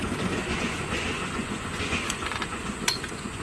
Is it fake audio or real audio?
fake